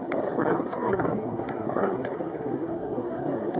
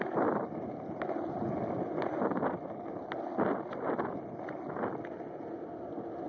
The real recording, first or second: second